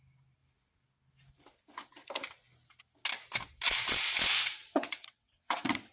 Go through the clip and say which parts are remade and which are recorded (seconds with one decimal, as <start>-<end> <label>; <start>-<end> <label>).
0.0-4.6 recorded; 4.6-5.9 remade